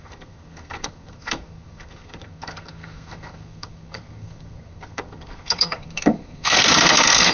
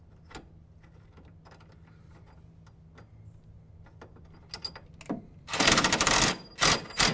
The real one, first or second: second